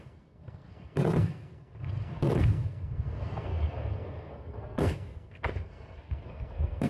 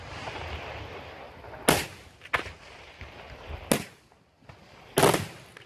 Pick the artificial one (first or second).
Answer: first